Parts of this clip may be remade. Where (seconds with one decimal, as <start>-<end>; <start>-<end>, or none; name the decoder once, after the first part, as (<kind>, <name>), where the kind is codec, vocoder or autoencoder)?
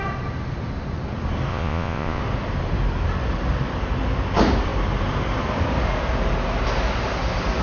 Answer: 1.5-2.2 (vocoder, Vocos)